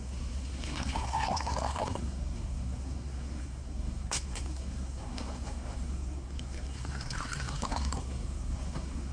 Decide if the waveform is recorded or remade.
remade